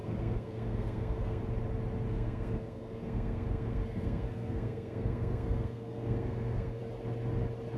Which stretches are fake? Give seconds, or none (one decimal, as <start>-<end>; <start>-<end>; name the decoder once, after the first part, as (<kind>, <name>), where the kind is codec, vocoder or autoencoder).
0.0-1.4 (codec, SNAC); 2.1-6.8